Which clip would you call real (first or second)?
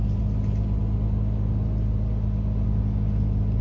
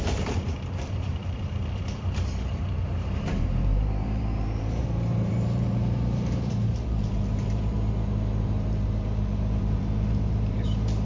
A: first